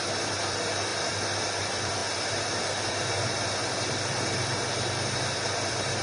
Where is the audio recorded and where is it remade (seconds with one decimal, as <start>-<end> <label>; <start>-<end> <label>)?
0.0-6.0 remade

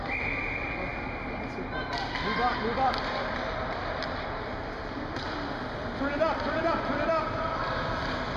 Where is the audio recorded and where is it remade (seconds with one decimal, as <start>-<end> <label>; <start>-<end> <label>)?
0.0-2.7 recorded; 2.7-7.1 remade; 7.1-8.4 recorded

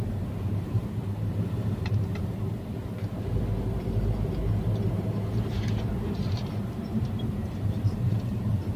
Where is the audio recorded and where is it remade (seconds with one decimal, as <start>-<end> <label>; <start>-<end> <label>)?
0.0-2.7 remade; 2.7-4.9 recorded; 4.9-8.8 remade

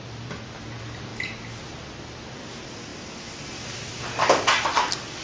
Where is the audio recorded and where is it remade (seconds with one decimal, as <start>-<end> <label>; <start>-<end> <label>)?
0.0-1.1 remade; 1.1-1.6 recorded; 1.6-5.2 remade

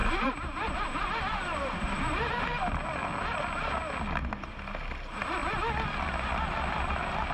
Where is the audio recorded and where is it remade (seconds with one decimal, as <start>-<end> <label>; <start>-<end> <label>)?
0.0-2.4 remade; 2.4-7.3 recorded

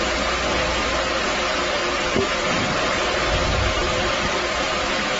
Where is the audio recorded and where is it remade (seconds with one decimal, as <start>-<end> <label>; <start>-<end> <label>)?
0.0-3.8 recorded; 3.8-4.6 remade; 4.6-5.2 recorded